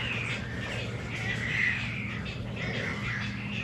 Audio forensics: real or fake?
real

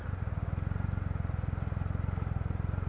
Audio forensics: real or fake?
real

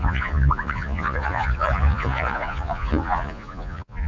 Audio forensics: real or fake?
fake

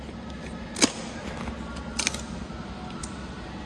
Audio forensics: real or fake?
real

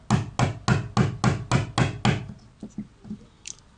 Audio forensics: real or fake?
real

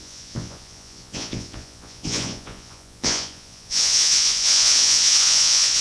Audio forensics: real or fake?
fake